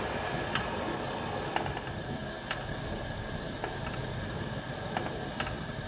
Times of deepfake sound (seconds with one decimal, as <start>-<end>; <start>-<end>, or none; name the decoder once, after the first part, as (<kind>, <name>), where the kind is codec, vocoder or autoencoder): 0.0-2.2 (vocoder, BigVGAN v2)